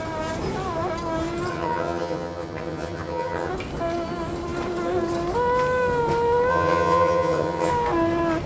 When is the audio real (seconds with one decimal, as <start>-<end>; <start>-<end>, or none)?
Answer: 0.0-1.5; 3.5-6.5; 7.7-8.5